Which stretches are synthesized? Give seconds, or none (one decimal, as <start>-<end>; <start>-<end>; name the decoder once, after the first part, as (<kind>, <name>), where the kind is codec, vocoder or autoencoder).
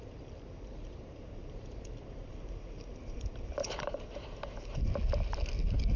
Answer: 0.0-4.9 (vocoder, BigVGAN v2)